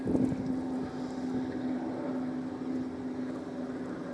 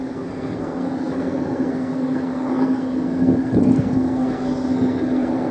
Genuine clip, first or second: first